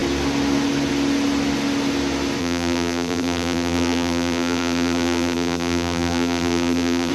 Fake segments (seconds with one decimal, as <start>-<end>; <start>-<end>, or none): 2.4-7.1